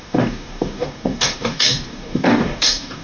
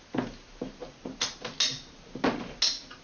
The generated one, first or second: first